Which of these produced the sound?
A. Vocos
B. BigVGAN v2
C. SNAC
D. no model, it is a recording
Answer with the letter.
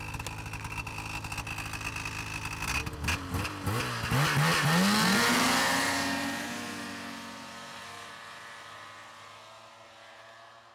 D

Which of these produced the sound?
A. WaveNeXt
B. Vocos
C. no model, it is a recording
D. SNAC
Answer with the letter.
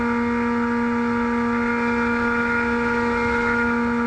C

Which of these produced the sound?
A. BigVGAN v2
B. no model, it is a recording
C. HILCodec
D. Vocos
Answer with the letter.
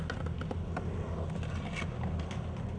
B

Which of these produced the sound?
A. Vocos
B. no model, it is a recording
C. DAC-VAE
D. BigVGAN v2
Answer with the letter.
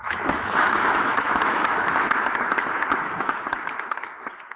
C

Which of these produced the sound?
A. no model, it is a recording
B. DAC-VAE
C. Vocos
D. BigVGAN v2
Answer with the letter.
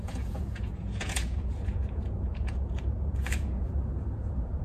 C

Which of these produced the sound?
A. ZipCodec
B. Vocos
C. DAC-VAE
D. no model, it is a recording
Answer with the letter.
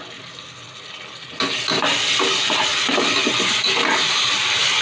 D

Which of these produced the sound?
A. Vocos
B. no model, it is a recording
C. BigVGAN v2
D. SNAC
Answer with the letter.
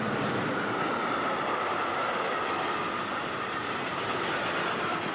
B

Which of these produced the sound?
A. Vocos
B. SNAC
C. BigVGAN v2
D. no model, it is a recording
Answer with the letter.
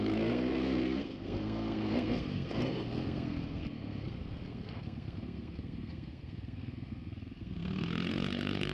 B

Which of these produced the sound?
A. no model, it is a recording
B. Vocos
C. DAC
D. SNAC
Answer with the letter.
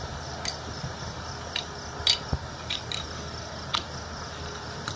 A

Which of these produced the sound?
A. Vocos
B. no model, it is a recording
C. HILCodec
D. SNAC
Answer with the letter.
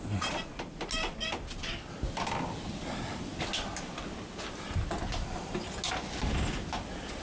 B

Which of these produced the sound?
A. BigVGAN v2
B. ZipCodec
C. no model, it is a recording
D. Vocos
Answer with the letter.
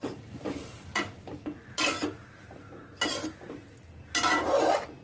C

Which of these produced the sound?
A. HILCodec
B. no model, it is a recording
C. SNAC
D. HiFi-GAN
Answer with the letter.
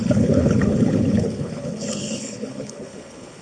A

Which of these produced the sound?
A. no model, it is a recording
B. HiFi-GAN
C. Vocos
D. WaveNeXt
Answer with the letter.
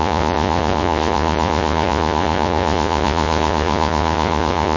C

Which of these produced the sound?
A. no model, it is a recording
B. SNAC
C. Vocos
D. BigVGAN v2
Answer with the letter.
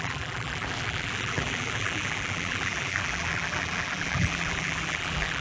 D